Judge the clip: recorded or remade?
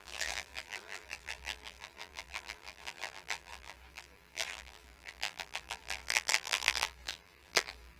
remade